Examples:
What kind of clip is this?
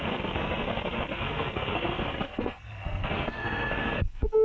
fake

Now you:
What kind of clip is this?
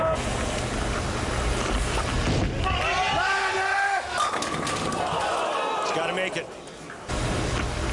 real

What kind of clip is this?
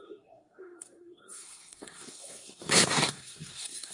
fake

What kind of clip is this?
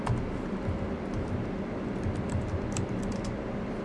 real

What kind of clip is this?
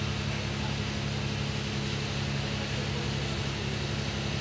real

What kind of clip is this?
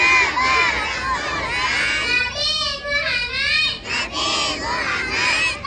real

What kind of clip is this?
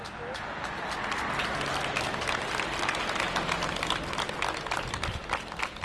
real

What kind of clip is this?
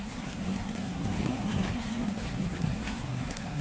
fake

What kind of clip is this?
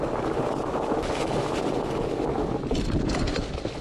real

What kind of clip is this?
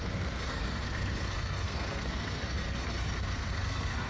fake